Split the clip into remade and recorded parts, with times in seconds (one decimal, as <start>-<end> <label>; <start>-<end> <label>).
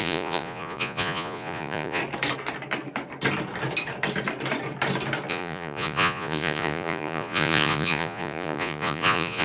0.0-2.0 remade; 2.0-5.3 recorded; 5.3-9.4 remade